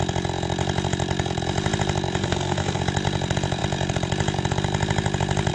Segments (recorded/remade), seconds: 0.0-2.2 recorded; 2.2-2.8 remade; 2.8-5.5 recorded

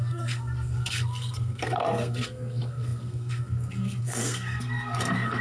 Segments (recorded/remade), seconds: 0.0-5.4 remade

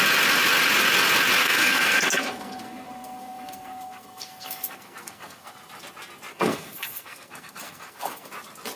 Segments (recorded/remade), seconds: 0.0-1.4 recorded; 1.4-5.5 remade; 5.5-6.3 recorded; 6.3-8.3 remade; 8.3-8.8 recorded

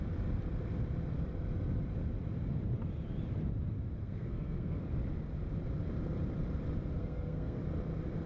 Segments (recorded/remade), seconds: 0.0-4.0 recorded; 4.0-4.8 remade; 4.8-7.0 recorded; 7.0-7.6 remade; 7.6-8.3 recorded

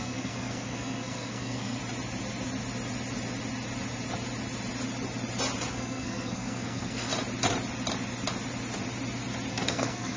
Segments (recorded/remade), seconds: 0.0-1.8 remade; 1.8-5.7 recorded; 5.7-7.1 remade; 7.1-9.5 recorded; 9.5-10.2 remade

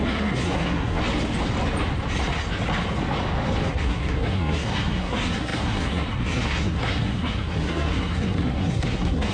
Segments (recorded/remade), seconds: 0.0-1.0 remade; 1.0-3.7 recorded; 3.7-9.3 remade

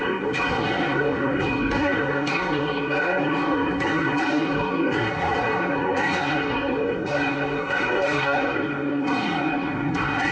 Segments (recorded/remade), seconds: 0.0-10.3 remade

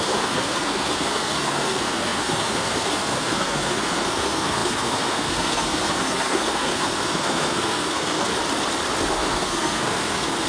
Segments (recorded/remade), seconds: 0.0-8.3 remade; 8.3-9.1 recorded; 9.1-10.5 remade